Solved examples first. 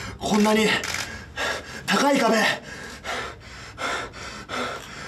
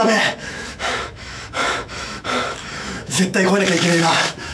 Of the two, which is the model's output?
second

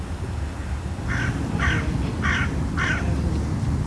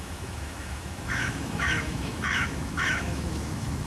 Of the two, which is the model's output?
second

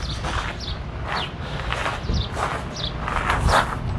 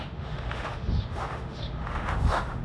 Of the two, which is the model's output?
second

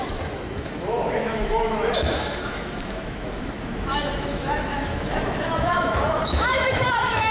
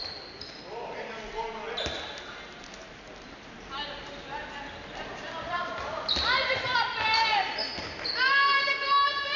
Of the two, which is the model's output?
first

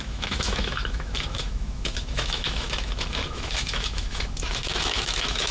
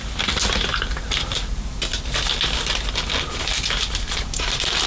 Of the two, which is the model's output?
first